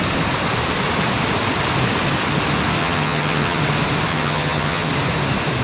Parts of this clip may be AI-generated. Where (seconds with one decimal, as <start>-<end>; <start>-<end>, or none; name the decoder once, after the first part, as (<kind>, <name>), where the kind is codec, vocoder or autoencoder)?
2.8-3.6 (vocoder, HiFi-GAN); 4.1-4.9